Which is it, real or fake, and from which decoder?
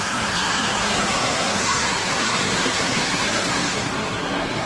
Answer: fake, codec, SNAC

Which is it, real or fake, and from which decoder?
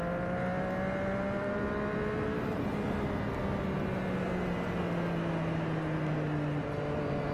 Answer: real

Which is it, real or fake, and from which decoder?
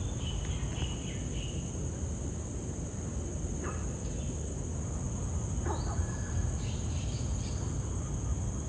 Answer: real